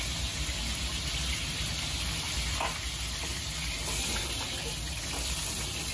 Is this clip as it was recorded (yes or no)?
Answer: yes